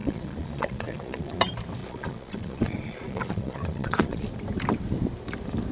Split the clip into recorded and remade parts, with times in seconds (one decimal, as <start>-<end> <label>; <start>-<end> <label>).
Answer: 0.0-1.4 remade; 1.4-1.8 recorded; 1.8-4.3 remade; 4.3-5.7 recorded